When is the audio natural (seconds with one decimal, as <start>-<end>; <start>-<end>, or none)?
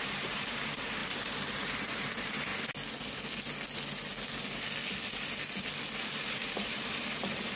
2.5-6.0